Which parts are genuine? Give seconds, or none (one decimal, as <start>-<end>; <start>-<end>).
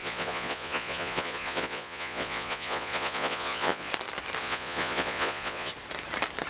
3.9-4.4; 5.7-6.5